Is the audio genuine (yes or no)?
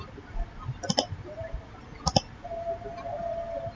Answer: yes